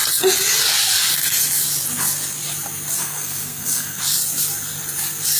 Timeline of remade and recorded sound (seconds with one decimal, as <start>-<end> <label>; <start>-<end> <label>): 0.0-3.0 recorded; 3.0-4.0 remade; 4.0-5.4 recorded